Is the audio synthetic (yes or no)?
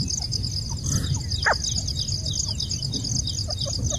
no